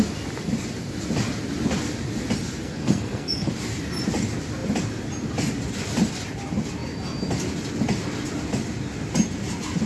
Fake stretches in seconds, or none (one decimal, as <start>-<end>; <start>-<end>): 2.6-3.5